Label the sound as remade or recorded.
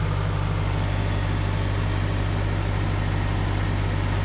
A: recorded